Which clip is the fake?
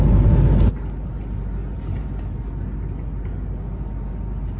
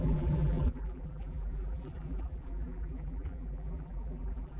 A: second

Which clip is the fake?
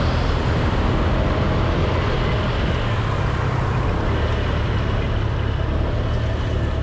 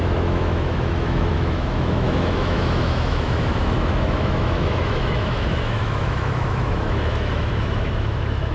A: second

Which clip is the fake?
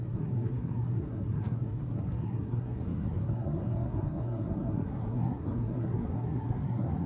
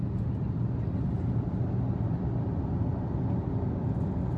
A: first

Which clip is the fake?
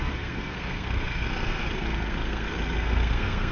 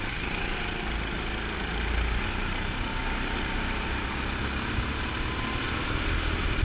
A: first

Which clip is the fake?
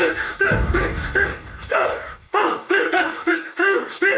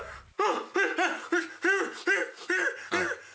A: first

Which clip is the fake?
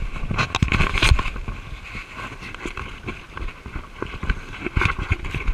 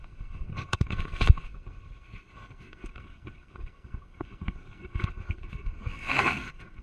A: second